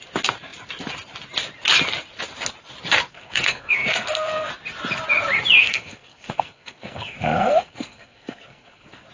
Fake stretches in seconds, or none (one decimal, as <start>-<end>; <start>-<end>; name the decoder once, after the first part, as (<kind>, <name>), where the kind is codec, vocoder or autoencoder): 3.1-4.5 (codec, SNAC); 5.6-9.1